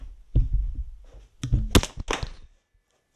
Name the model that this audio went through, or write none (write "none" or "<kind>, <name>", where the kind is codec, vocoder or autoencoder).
none